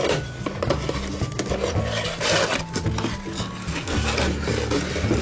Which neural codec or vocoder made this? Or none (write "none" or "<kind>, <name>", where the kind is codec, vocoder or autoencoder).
none